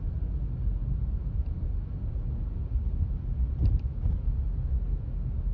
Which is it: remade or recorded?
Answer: recorded